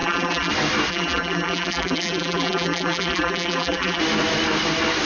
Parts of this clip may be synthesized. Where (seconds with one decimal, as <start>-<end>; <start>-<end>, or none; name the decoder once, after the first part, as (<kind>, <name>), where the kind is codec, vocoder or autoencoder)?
0.0-0.5 (vocoder, BigVGAN v2); 0.9-4.0